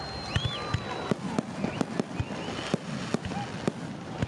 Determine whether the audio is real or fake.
real